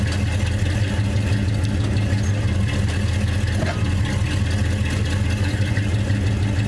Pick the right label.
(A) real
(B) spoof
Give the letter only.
A